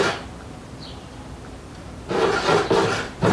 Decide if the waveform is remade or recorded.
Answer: remade